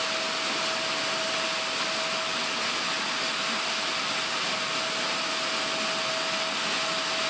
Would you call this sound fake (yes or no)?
no